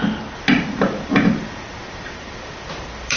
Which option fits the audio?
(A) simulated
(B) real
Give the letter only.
B